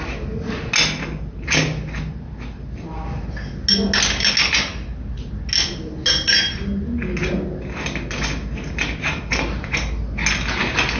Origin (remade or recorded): recorded